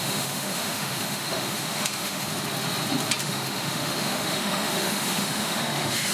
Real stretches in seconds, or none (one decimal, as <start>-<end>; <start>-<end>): 2.3-3.2